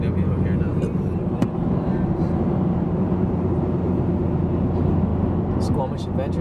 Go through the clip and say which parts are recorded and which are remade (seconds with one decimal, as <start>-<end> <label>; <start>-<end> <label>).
0.0-0.7 recorded; 0.7-4.1 remade; 4.1-6.4 recorded

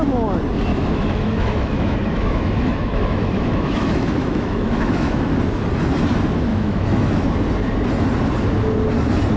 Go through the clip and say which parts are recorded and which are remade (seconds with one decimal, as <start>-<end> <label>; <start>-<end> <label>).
0.0-0.7 recorded; 0.7-5.3 remade; 5.3-6.5 recorded; 6.5-7.3 remade; 7.3-9.4 recorded

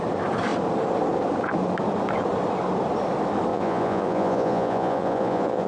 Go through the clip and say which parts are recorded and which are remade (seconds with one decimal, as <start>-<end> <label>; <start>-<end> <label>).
0.0-3.5 recorded; 3.5-5.7 remade

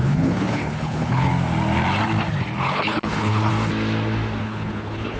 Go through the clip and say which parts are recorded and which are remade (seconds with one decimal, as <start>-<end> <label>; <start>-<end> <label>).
0.0-1.3 remade; 1.3-2.6 recorded; 2.6-3.5 remade; 3.5-4.4 recorded; 4.4-5.2 remade

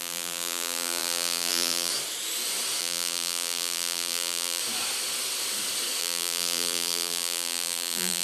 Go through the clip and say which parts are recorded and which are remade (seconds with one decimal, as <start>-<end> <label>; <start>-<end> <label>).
0.0-1.9 remade; 1.9-2.8 recorded; 2.8-4.6 remade; 4.6-6.0 recorded; 6.0-8.2 remade

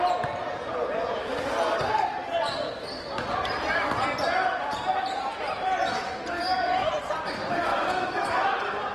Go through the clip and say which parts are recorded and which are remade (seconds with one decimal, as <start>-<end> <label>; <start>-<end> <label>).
0.0-7.7 recorded; 7.7-8.5 remade; 8.5-8.9 recorded